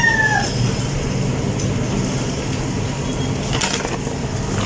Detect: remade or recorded recorded